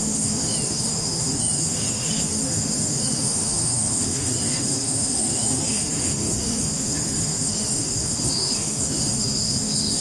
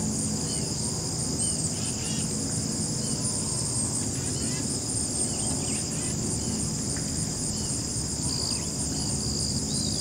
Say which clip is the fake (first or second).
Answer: first